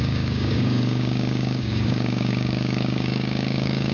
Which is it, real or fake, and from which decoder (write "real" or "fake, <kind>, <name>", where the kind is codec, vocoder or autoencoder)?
fake, codec, DAC